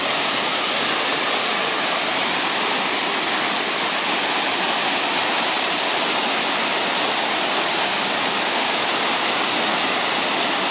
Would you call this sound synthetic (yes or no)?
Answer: no